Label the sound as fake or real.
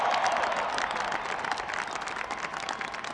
real